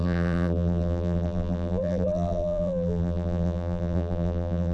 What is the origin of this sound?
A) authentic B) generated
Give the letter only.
B